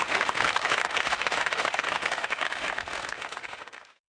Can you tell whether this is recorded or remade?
remade